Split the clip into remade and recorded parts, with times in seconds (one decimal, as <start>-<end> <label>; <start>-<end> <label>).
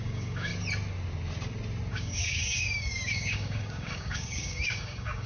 0.0-0.5 remade; 0.5-1.9 recorded; 1.9-5.3 remade